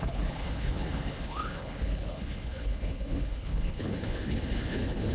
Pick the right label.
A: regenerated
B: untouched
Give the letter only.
A